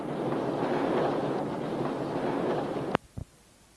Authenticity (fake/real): real